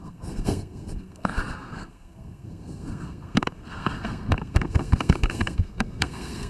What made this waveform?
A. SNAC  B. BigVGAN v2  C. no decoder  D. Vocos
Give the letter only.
A